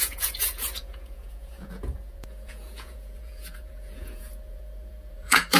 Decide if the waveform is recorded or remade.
remade